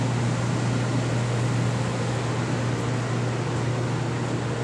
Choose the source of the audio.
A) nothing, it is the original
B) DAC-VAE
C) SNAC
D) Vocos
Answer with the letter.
A